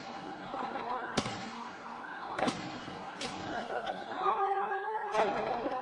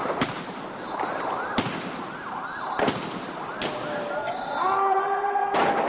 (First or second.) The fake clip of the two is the first